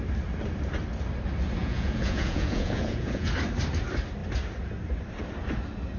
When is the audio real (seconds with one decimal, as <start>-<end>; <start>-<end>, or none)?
0.0-1.6; 3.3-6.0